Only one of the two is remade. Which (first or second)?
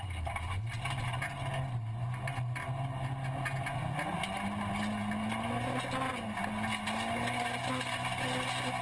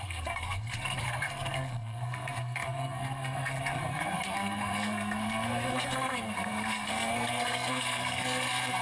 second